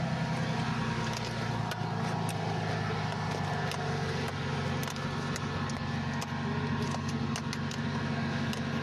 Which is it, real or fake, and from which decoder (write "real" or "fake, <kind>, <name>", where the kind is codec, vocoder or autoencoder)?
real